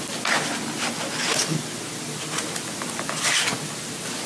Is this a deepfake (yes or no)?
no